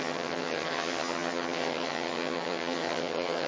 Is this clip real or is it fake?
fake